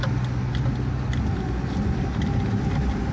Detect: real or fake real